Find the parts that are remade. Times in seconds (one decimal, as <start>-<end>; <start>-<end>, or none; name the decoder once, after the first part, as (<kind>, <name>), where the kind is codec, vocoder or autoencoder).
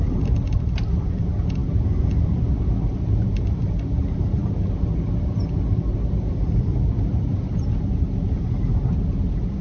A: none